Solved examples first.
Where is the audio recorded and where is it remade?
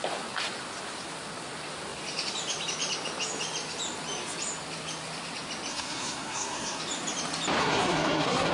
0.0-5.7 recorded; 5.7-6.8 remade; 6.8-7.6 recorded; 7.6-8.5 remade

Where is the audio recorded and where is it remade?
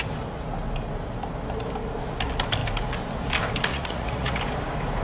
0.0-3.7 recorded; 3.7-4.4 remade; 4.4-5.0 recorded